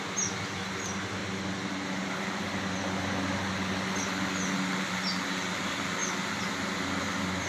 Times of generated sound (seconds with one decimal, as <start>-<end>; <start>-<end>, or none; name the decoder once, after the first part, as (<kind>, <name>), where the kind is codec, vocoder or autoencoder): none